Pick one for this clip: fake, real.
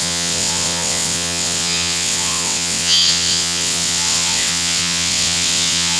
fake